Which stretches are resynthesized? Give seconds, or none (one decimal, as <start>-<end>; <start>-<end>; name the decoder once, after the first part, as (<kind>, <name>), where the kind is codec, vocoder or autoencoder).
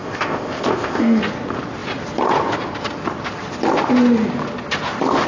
0.0-1.2 (codec, ZipCodec)